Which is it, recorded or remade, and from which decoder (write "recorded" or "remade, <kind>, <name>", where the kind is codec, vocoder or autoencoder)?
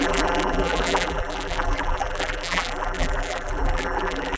remade, vocoder, BigVGAN v2